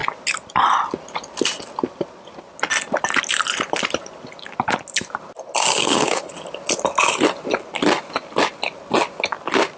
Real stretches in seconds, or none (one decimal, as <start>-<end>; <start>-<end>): 0.0-5.8; 6.3-9.8